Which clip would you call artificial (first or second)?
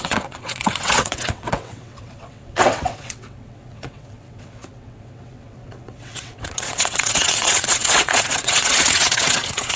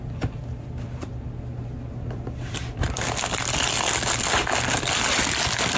first